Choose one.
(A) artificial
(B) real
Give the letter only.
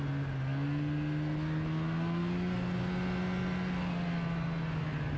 B